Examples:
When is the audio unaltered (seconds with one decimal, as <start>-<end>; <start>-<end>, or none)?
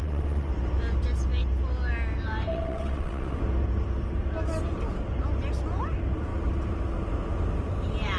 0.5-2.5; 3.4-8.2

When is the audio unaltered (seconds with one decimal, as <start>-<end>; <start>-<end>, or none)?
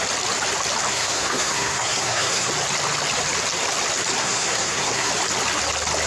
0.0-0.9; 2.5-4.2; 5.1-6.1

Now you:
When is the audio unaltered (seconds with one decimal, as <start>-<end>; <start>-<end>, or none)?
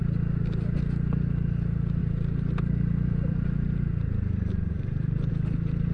0.0-2.0; 5.3-5.9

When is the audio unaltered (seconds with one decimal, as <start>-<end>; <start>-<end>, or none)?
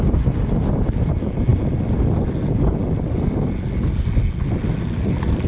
0.0-5.5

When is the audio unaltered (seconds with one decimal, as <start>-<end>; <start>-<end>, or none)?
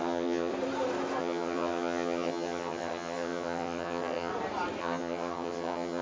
0.5-1.2; 4.3-4.8